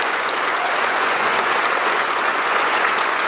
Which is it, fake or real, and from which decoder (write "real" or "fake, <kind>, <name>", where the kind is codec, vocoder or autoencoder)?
fake, vocoder, Vocos